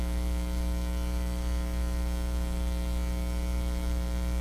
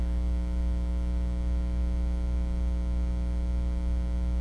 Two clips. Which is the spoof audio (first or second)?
first